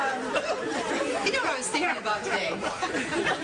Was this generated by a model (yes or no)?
yes